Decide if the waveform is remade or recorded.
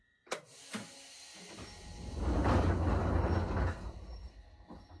recorded